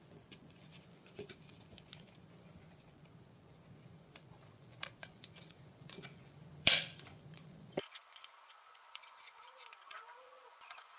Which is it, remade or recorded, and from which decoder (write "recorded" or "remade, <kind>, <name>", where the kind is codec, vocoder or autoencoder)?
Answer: remade, vocoder, Vocos